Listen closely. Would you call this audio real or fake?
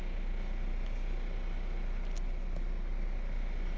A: real